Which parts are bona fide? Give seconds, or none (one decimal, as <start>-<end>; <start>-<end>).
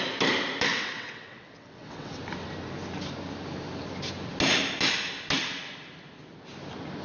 0.0-0.7; 2.2-7.0